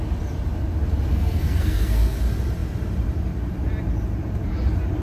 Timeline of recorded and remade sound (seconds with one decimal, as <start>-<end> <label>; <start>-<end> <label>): 0.0-1.1 recorded; 1.1-2.2 remade; 2.2-5.0 recorded